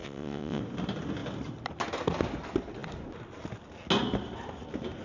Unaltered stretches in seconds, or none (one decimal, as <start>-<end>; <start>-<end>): 0.6-5.0